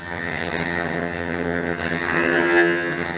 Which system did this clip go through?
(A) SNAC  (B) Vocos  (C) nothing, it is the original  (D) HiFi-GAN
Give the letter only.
D